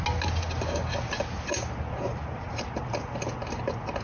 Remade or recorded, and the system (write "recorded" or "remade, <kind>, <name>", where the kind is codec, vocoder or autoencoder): recorded